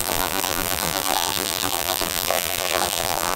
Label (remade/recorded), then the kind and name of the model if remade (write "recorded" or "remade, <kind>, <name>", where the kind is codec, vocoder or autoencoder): remade, vocoder, BigVGAN v2